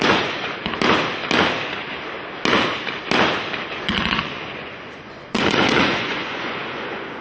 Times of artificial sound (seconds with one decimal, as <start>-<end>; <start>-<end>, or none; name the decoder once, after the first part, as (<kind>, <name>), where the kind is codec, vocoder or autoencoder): 0.0-0.6 (vocoder, Vocos); 3.7-7.2